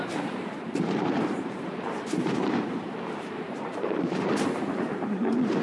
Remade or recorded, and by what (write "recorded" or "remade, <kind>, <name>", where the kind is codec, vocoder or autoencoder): remade, vocoder, BigVGAN v2